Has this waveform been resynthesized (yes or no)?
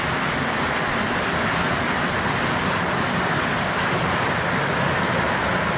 no